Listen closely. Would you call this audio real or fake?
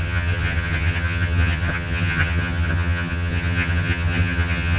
fake